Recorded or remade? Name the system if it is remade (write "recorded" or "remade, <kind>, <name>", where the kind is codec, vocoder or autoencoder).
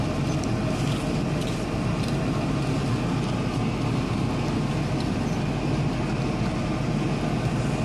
recorded